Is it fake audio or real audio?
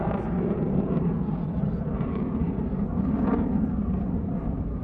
fake